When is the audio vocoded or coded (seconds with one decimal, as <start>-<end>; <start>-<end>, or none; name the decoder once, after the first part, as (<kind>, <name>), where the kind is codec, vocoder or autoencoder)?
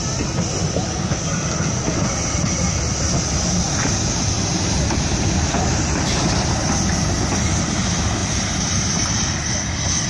4.5-5.6 (vocoder, BigVGAN v2); 8.2-9.5